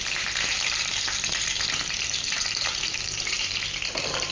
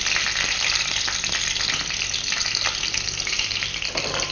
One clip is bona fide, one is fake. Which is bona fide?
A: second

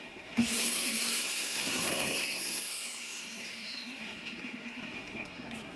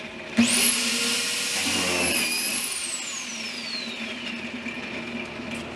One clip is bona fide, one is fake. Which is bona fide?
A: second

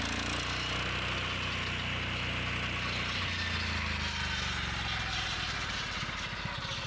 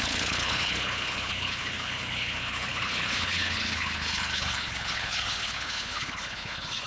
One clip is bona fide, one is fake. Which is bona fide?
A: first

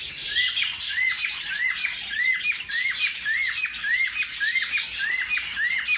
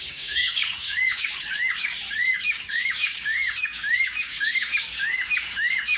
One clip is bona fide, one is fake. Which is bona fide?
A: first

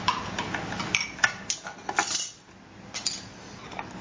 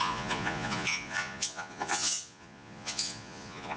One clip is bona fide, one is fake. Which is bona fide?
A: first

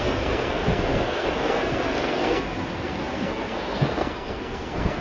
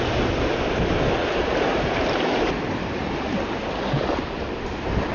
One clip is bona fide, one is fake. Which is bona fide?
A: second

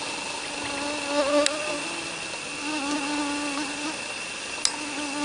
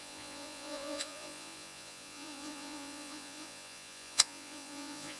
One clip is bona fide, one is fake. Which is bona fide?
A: first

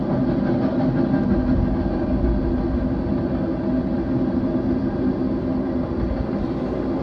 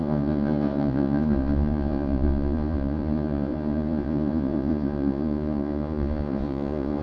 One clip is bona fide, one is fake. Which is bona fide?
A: first